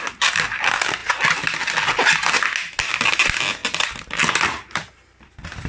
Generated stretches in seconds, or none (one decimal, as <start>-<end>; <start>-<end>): none